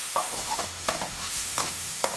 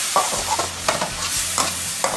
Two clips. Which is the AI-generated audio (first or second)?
first